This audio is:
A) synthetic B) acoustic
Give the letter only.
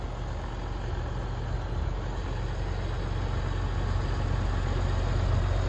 B